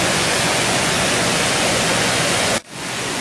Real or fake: fake